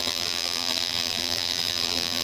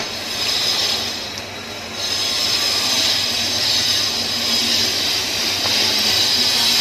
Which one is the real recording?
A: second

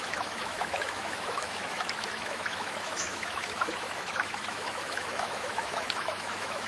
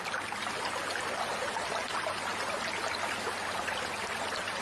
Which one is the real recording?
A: second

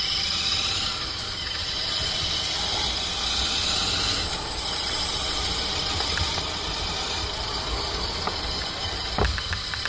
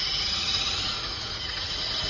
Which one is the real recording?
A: first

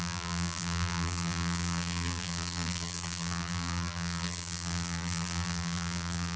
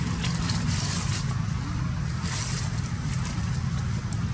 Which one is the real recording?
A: second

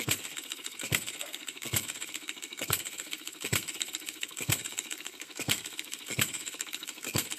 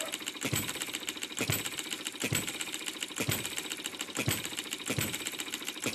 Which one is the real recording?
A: second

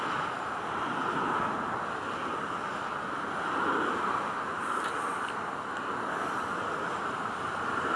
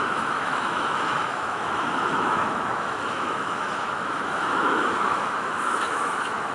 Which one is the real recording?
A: first